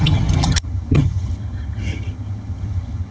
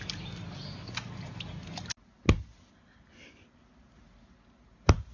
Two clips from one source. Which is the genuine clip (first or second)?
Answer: second